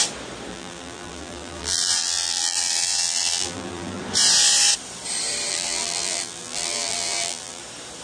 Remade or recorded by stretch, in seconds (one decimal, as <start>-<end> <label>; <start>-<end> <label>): 0.0-0.5 recorded; 0.5-4.0 remade; 4.0-5.5 recorded; 5.5-7.6 remade; 7.6-8.0 recorded